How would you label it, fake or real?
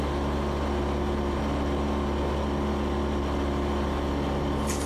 real